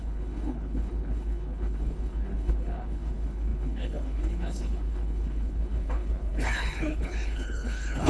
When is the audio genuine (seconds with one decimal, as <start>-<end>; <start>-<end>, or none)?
none